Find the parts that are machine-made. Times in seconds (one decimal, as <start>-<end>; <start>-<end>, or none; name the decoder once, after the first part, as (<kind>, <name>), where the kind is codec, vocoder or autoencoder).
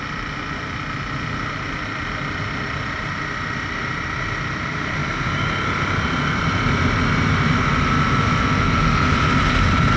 none